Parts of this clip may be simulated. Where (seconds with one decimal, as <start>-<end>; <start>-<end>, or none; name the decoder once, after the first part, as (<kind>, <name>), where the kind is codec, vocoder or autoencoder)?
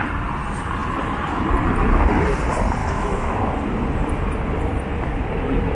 2.8-3.4 (autoencoder, DAC-VAE)